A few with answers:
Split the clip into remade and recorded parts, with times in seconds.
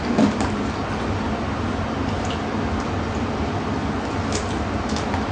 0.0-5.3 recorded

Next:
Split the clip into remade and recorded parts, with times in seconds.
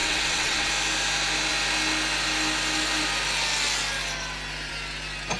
0.0-0.7 remade; 0.7-5.4 recorded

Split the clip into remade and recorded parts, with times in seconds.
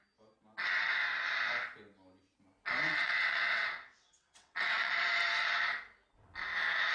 0.0-2.9 recorded; 2.9-4.9 remade; 4.9-6.9 recorded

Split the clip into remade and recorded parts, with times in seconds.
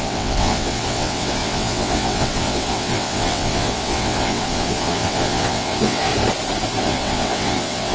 0.0-6.1 remade; 6.1-6.8 recorded; 6.8-7.9 remade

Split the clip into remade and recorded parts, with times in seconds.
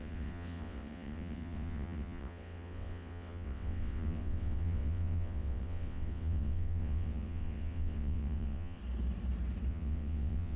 0.0-8.8 remade; 8.8-9.7 recorded; 9.7-10.6 remade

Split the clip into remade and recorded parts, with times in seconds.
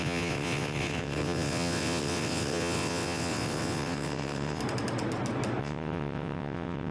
0.0-4.6 remade; 4.6-5.6 recorded; 5.6-6.9 remade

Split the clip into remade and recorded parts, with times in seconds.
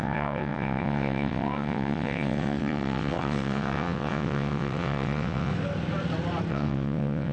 0.0-5.5 remade; 5.5-6.5 recorded; 6.5-7.3 remade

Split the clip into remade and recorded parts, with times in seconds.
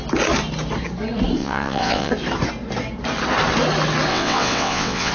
0.0-1.4 recorded; 1.4-2.1 remade; 2.1-4.1 recorded; 4.1-5.1 remade